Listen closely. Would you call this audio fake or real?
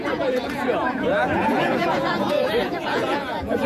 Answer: fake